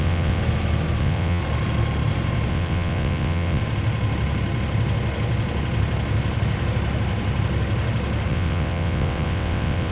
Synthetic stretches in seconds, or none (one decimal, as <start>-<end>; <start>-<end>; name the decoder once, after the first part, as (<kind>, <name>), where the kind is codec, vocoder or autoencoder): 0.0-0.4 (vocoder, WaveNeXt); 1.0-1.4; 2.5-3.6; 8.3-9.9